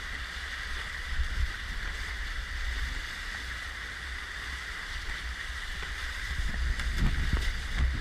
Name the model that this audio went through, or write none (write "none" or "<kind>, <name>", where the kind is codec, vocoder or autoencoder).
none